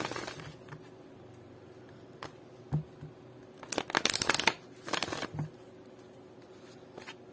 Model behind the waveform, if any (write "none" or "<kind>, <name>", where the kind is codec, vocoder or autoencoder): none